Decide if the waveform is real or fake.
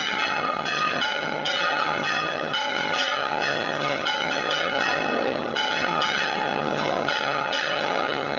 fake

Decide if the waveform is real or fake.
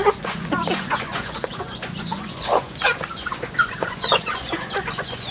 fake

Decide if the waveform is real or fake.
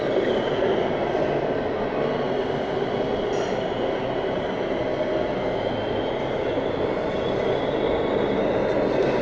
real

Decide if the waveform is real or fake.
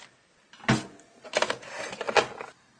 real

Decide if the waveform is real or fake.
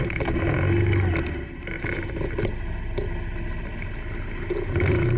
real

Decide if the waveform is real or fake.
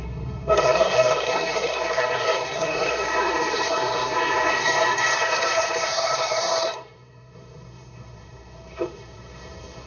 fake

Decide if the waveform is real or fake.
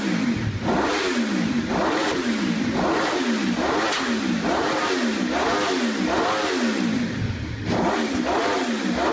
real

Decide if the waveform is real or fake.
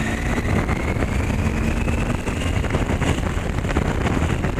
real